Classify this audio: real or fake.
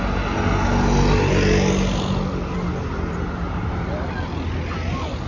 real